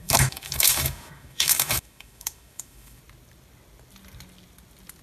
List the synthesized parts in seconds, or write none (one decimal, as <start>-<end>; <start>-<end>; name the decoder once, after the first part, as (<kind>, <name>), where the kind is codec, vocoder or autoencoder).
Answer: 0.0-3.0 (autoencoder, DAC-VAE)